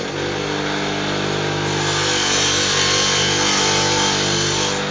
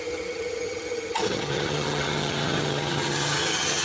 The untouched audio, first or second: first